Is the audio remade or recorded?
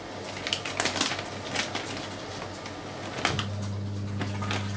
recorded